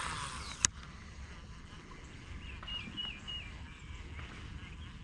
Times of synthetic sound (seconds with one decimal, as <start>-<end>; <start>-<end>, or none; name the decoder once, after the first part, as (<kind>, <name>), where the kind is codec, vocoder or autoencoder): 3.0-3.8 (vocoder, BigVGAN v2)